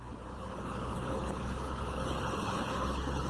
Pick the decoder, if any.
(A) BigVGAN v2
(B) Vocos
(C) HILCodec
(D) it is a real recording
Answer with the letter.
C